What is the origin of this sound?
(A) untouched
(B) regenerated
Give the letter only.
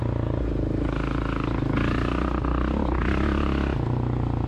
A